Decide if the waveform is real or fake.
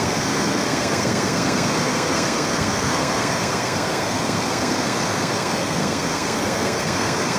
fake